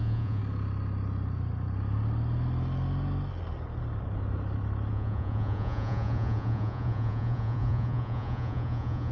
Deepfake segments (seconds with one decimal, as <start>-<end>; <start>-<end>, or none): 0.0-0.4; 4.9-9.1